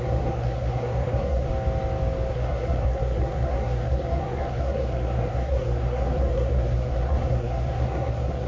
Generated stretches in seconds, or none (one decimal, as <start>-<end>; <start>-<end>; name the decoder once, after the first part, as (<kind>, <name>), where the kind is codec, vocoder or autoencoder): 0.0-1.5 (codec, SNAC); 2.3-8.5